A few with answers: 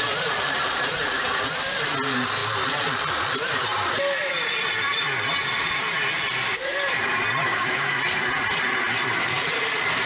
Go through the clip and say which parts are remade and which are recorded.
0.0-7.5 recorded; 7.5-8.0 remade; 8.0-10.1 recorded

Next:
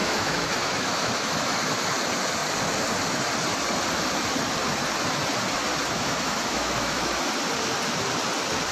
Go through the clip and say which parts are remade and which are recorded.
0.0-1.6 remade; 1.6-5.8 recorded; 5.8-7.3 remade; 7.3-8.7 recorded

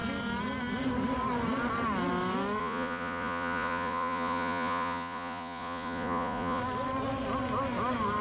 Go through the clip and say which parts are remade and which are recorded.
0.0-2.6 recorded; 2.6-6.6 remade; 6.6-8.2 recorded

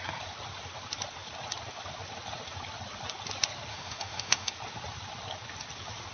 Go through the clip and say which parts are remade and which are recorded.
0.0-3.7 recorded; 3.7-4.5 remade; 4.5-6.1 recorded